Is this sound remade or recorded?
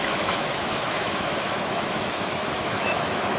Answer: remade